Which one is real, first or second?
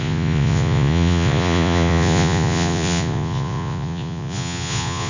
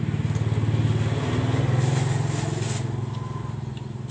second